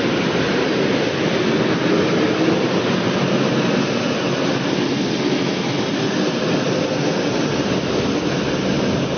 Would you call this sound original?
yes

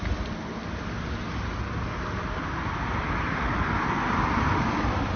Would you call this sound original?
yes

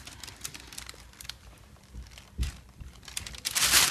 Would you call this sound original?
no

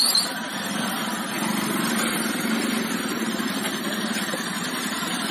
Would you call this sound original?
yes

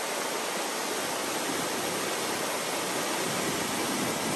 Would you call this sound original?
yes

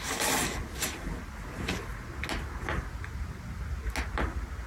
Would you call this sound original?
yes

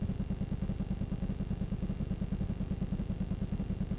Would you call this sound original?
yes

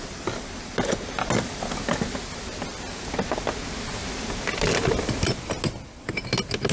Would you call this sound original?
yes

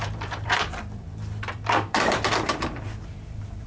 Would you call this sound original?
no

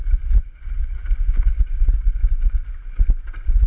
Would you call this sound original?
yes